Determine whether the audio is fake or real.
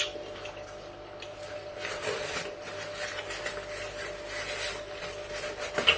real